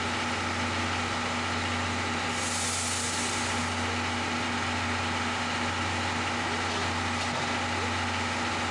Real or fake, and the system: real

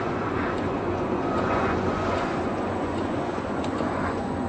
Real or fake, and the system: fake, vocoder, Vocos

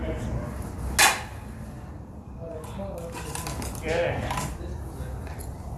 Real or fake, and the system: real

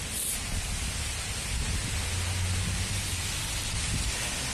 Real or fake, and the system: real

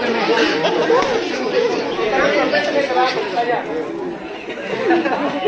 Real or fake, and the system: real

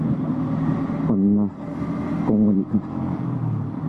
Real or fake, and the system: real